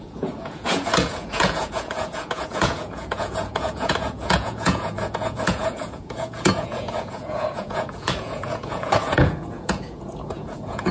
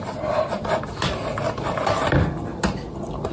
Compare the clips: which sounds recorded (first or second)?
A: second